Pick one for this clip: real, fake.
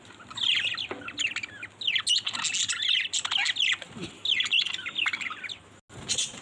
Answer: real